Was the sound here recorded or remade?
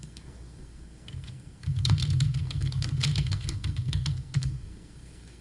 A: remade